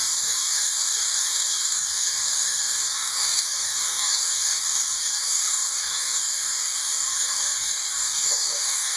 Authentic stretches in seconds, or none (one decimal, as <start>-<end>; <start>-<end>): none